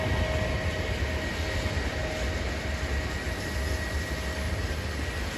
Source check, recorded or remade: recorded